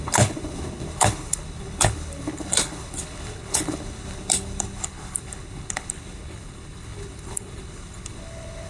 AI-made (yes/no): yes